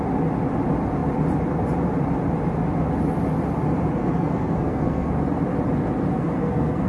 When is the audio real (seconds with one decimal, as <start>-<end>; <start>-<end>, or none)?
0.0-4.0; 5.2-6.1